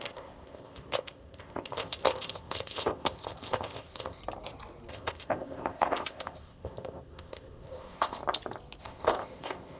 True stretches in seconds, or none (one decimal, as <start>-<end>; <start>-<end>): 4.2-4.9; 8.2-8.8